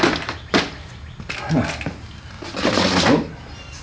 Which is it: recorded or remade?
recorded